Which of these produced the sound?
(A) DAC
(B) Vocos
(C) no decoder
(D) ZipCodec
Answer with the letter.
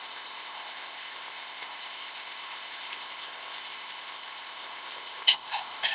D